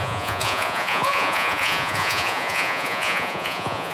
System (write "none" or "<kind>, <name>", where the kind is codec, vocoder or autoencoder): vocoder, Vocos